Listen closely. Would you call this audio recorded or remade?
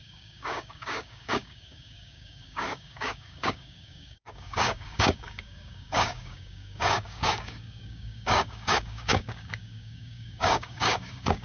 remade